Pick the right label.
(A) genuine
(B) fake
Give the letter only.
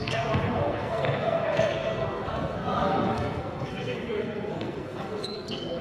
B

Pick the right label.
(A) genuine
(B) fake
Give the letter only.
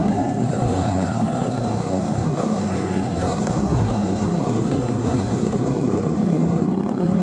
B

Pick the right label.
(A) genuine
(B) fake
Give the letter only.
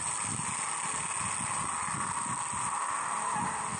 A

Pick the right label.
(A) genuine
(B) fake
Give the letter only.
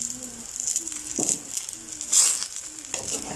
A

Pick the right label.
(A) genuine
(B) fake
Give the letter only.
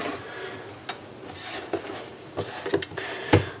A